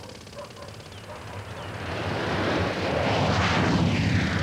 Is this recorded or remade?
recorded